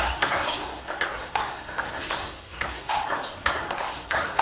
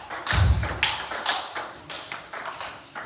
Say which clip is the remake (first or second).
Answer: first